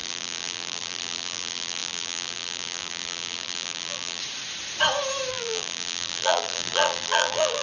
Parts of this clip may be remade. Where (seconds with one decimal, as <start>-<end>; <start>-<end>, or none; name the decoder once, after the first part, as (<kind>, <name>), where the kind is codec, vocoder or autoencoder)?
0.0-4.2 (vocoder, BigVGAN v2); 5.3-7.6